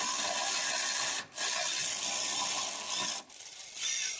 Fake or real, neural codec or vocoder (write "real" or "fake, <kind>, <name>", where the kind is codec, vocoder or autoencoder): real